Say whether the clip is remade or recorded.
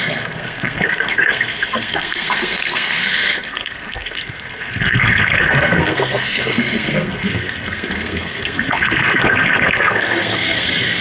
remade